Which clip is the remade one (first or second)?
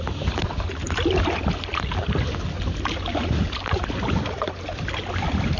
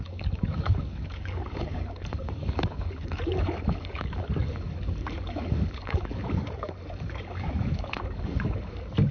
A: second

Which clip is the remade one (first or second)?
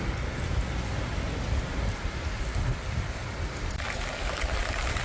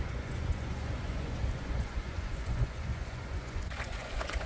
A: second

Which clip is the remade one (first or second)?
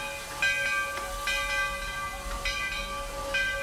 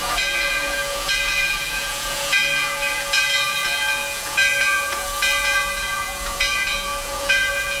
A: second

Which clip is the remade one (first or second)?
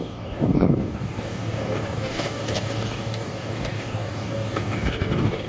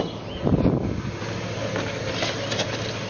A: first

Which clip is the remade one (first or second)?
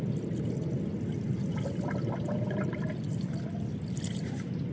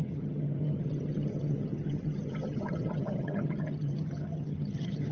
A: second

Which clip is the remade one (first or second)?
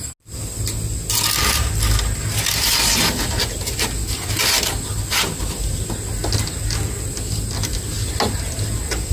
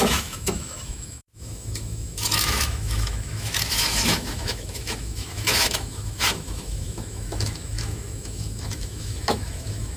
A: second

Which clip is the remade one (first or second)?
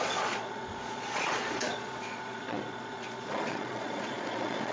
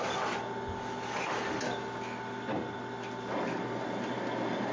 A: first